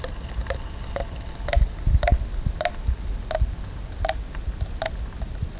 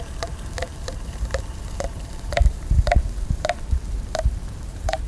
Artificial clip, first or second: second